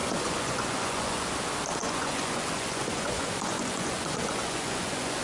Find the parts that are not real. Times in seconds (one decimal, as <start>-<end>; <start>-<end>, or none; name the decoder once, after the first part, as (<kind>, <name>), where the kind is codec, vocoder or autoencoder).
0.0-1.3 (vocoder, Vocos); 1.8-5.2